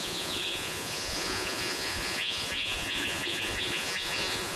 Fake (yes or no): yes